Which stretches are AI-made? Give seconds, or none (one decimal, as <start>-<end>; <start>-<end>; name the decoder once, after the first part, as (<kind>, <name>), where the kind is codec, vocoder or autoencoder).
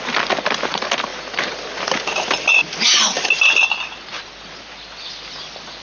none